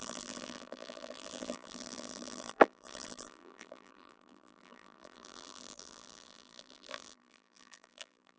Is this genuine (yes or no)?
no